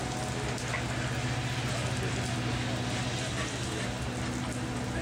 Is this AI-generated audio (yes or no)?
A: no